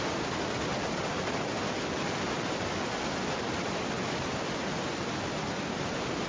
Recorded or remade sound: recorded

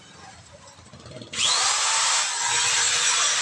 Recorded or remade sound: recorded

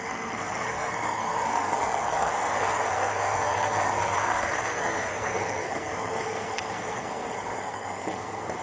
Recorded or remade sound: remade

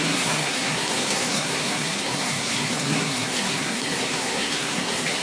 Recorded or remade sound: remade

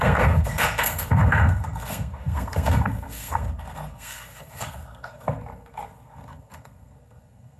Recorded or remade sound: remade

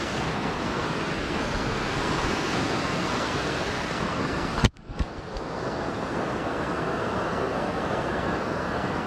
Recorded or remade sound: remade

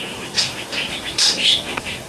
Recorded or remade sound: remade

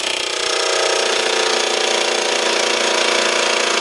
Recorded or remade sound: recorded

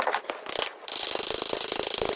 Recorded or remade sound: recorded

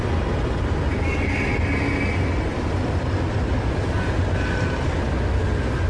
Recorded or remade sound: recorded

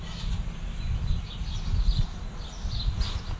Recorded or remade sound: recorded